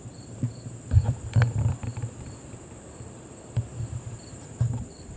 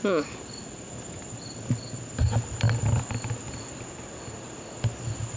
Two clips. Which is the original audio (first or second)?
second